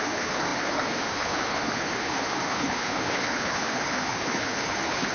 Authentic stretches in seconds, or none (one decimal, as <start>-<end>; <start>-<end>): none